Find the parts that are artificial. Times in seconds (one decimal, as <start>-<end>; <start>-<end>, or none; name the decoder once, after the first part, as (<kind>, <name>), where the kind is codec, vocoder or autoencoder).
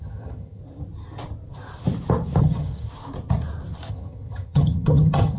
0.0-0.6 (vocoder, HiFi-GAN); 2.4-2.9; 3.9-5.4